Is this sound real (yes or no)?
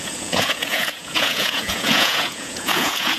no